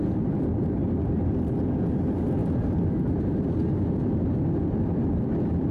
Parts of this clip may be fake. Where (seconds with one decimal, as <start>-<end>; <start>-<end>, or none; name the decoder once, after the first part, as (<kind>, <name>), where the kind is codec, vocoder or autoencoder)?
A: 2.4-3.6 (vocoder, BigVGAN v2)